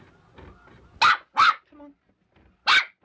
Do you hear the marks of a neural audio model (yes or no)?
no